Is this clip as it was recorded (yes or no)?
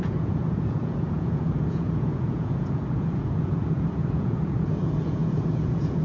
no